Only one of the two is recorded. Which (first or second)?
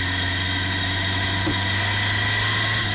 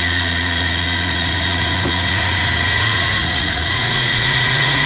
first